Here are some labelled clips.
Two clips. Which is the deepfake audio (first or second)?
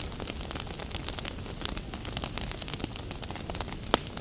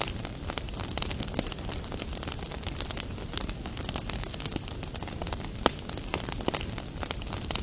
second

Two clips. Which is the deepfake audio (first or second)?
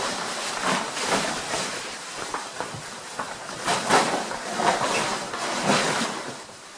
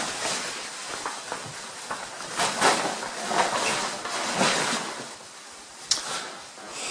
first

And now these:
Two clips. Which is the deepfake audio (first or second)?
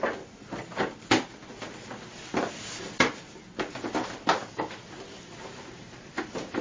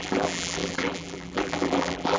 second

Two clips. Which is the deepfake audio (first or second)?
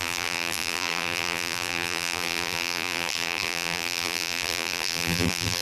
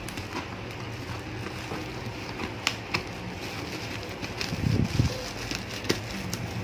first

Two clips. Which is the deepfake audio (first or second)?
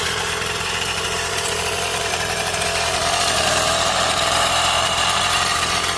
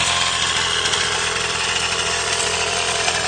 first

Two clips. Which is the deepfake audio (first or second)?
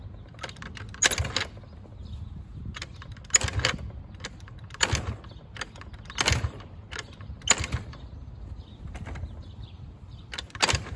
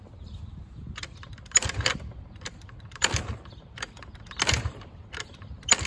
second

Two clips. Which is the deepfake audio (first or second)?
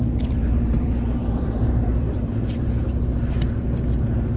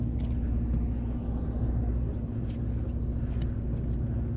first